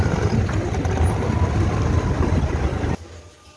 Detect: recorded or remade recorded